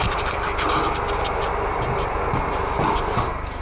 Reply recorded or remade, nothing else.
recorded